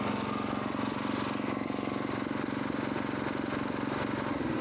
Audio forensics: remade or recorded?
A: recorded